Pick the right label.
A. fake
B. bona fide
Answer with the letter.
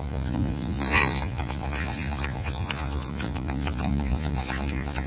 A